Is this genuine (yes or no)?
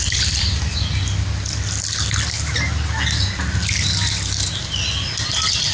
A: yes